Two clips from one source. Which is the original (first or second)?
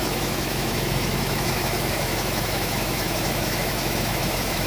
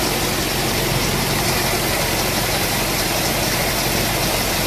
second